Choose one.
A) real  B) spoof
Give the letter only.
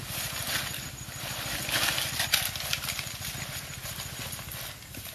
A